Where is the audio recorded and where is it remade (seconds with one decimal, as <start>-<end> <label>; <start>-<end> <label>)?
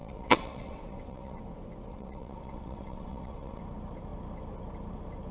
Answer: 0.0-1.4 remade; 1.4-1.9 recorded; 1.9-3.6 remade; 3.6-5.3 recorded